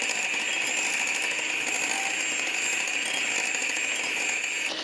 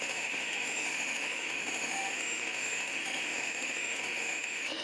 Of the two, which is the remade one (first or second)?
second